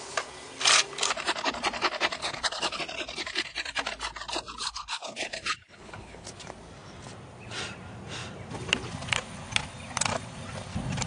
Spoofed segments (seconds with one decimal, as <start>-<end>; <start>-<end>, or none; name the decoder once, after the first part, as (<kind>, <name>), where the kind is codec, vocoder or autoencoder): 2.2-2.8 (codec, HILCodec); 4.6-6.3